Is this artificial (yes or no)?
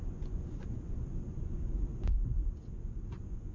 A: yes